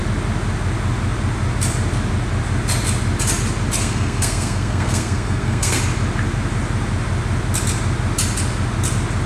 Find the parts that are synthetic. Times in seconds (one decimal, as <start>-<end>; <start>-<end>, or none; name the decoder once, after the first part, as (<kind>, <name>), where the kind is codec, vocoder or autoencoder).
3.8-5.8 (codec, SNAC)